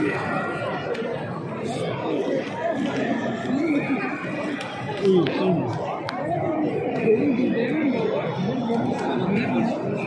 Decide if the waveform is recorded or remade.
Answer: recorded